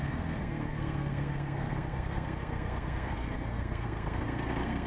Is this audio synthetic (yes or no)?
yes